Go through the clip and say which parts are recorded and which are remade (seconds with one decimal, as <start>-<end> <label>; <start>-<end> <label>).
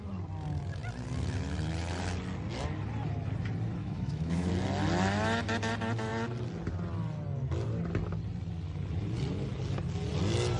0.0-3.8 recorded; 3.8-4.5 remade; 4.5-10.6 recorded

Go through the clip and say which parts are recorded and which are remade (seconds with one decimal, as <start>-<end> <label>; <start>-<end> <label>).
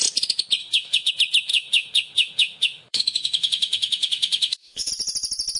0.0-0.6 recorded; 0.6-1.1 remade; 1.1-1.5 recorded; 1.5-4.9 remade; 4.9-5.6 recorded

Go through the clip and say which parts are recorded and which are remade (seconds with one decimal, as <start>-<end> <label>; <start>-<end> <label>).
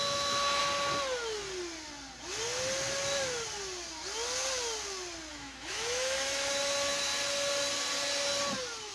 0.0-0.6 remade; 0.6-5.3 recorded; 5.3-7.1 remade; 7.1-8.9 recorded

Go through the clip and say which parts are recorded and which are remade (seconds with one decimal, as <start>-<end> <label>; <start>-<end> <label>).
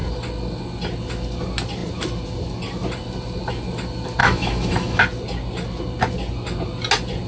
0.0-4.2 recorded; 4.2-5.0 remade; 5.0-7.3 recorded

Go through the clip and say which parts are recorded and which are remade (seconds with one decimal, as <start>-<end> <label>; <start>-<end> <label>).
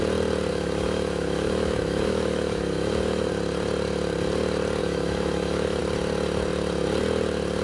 0.0-0.5 recorded; 0.5-3.3 remade; 3.3-4.8 recorded; 4.8-5.8 remade; 5.8-7.6 recorded